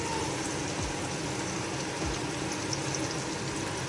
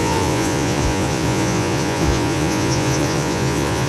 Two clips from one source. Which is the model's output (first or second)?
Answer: second